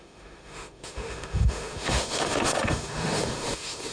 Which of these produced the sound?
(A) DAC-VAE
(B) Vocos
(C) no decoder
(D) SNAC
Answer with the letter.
A